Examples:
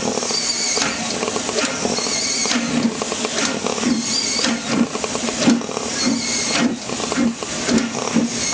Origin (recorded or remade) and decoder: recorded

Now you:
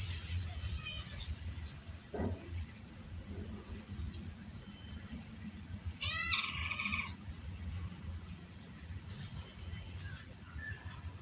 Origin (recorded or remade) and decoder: remade, vocoder, Vocos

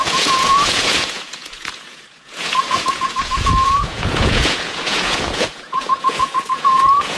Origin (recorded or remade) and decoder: remade, vocoder, Vocos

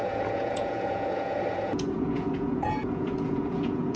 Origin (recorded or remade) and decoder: remade, vocoder, Vocos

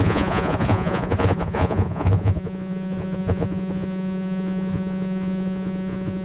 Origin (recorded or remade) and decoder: remade, vocoder, Vocos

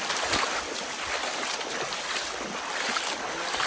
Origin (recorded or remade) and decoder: recorded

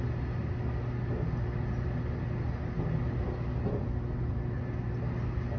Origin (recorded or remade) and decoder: recorded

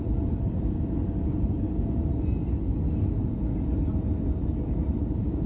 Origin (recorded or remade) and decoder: recorded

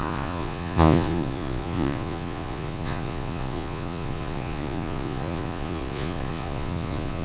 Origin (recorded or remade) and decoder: remade, vocoder, Vocos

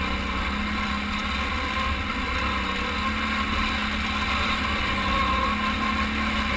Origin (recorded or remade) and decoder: recorded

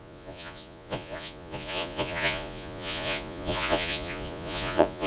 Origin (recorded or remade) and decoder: remade, vocoder, Vocos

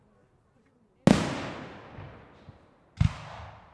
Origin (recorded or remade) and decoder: recorded